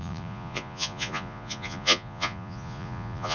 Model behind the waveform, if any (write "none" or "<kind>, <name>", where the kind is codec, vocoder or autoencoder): vocoder, Vocos